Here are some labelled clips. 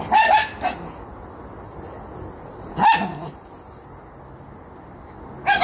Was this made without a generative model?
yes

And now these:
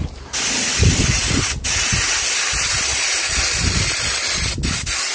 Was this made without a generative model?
yes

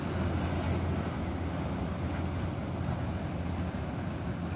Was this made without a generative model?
yes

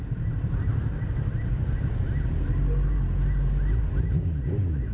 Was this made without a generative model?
yes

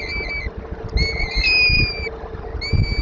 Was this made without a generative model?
yes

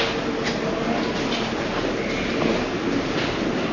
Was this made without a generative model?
yes